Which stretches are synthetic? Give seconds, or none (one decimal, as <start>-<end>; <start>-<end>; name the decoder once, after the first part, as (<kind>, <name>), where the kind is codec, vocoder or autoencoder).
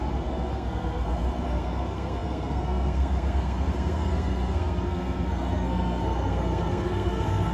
0.0-7.5 (codec, SNAC)